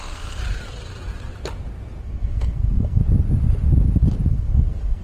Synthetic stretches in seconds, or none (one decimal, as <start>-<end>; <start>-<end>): 0.0-0.4; 2.0-3.0; 4.3-5.0